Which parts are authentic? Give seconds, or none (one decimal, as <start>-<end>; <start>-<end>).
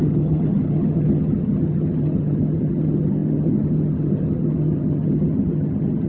none